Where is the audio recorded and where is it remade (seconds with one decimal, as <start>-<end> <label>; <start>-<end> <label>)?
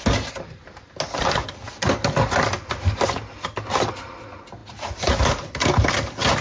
0.0-6.4 recorded